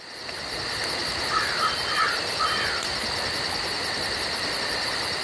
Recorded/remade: recorded